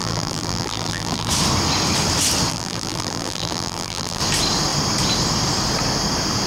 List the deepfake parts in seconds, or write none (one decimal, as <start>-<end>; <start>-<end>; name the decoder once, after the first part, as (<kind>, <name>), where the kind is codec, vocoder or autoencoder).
0.0-1.3 (vocoder, BigVGAN v2); 2.5-4.2